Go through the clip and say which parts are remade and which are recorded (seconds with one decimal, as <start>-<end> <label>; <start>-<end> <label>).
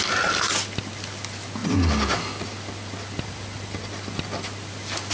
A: 0.0-5.1 recorded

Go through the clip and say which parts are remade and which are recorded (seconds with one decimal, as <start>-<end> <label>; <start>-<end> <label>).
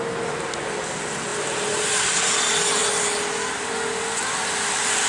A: 0.0-1.3 recorded; 1.3-2.2 remade; 2.2-5.1 recorded